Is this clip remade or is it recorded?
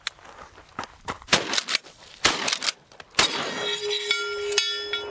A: recorded